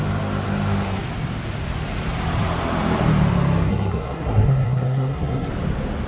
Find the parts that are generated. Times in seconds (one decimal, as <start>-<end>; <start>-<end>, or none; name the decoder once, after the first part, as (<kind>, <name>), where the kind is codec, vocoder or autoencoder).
3.7-5.5 (codec, SNAC)

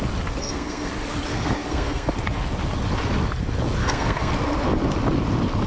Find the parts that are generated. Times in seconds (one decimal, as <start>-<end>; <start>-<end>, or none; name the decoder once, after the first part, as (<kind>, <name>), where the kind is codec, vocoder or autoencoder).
0.4-0.9 (codec, SNAC); 1.3-2.1; 3.8-4.3

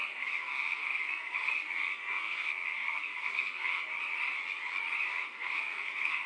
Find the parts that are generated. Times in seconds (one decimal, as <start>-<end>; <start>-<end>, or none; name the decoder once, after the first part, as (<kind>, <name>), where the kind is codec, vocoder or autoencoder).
0.0-3.8 (codec, SNAC); 5.1-6.3

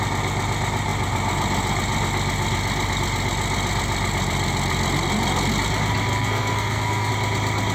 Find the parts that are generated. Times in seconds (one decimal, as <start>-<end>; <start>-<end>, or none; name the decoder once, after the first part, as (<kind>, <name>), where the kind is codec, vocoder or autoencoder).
6.1-7.1 (codec, SNAC)

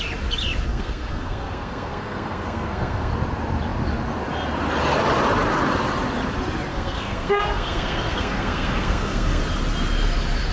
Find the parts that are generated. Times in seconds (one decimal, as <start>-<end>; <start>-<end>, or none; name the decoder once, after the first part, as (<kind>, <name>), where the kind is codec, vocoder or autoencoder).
0.7-3.1 (codec, SNAC); 6.7-9.4

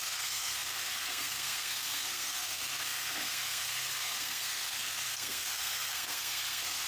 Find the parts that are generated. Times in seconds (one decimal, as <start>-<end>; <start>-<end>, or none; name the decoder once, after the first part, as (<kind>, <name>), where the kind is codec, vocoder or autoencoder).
0.0-6.9 (codec, SNAC)

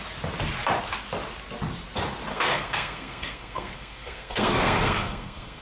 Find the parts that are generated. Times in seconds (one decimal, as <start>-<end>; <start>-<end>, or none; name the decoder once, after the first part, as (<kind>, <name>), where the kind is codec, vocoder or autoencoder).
2.3-5.6 (codec, SNAC)

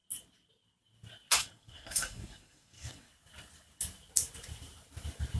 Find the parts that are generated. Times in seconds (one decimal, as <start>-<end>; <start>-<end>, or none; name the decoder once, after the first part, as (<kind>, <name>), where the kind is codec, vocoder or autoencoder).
1.3-3.1 (codec, SNAC)